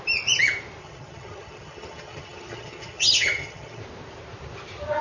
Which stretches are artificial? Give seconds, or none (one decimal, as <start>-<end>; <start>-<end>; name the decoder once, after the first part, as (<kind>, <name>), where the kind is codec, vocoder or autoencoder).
0.8-3.8 (vocoder, HiFi-GAN)

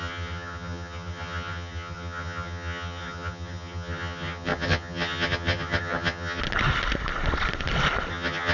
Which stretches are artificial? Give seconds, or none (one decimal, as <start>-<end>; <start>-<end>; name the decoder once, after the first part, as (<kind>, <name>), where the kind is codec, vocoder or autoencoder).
0.0-6.4 (vocoder, HiFi-GAN); 8.1-8.5

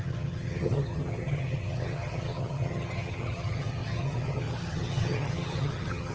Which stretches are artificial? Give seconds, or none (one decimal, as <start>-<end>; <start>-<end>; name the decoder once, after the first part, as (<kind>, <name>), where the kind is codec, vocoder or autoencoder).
0.0-6.1 (vocoder, HiFi-GAN)

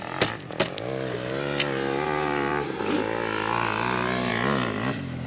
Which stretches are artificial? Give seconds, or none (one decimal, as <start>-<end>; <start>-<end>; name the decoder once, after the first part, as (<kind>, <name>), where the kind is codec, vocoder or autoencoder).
none

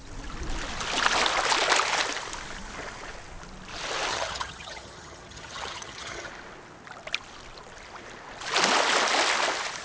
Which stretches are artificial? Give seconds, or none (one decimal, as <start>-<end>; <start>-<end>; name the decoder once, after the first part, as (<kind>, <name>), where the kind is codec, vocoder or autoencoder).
4.1-6.3 (vocoder, HiFi-GAN)